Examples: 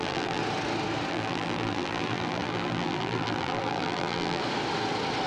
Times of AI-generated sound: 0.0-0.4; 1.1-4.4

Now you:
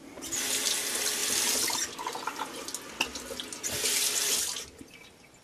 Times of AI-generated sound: none

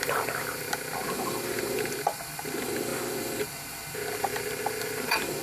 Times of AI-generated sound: 0.0-5.4

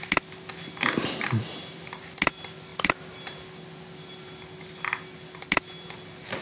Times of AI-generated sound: none

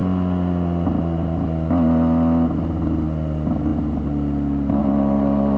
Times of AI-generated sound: none

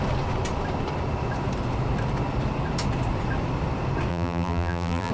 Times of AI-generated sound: 4.1-5.1